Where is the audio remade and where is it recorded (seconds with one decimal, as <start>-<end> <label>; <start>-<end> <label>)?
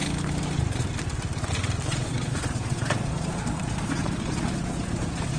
0.0-1.9 recorded; 1.9-5.4 remade